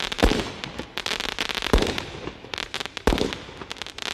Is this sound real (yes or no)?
yes